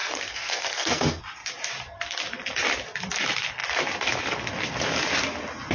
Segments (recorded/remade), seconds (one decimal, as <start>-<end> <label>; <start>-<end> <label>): 0.0-1.2 remade; 1.2-5.7 recorded